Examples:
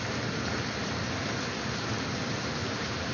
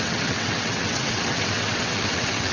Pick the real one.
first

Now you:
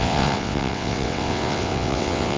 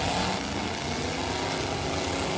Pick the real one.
second